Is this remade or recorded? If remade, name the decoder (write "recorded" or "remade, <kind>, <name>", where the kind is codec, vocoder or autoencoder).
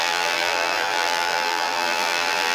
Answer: remade, vocoder, BigVGAN v2